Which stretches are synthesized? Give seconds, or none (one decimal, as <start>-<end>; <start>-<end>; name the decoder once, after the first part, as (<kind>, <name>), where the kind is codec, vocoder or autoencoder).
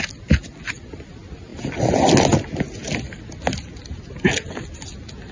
none